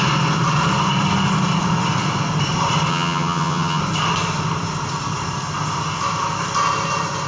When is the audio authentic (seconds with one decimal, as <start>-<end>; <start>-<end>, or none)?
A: 0.0-2.9; 3.8-7.3